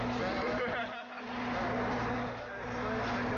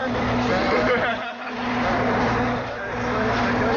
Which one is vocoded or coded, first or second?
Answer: second